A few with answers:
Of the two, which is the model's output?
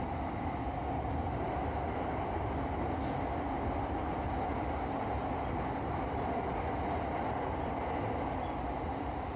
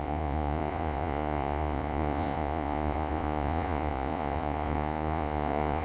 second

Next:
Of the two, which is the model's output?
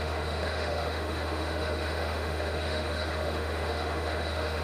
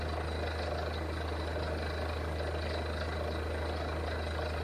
first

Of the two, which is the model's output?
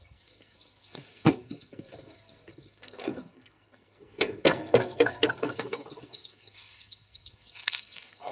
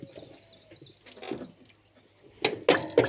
first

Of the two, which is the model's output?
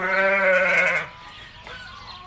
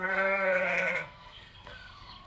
second